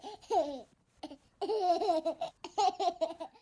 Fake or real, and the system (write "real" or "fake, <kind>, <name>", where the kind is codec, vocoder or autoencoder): real